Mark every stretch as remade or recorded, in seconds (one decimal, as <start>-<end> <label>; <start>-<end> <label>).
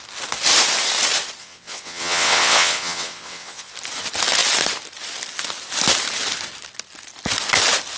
0.0-1.4 recorded; 1.4-3.7 remade; 3.7-8.0 recorded